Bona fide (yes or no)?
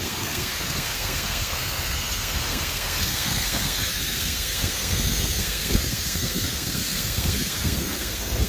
no